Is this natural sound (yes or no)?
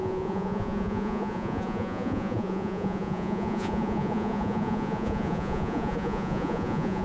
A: no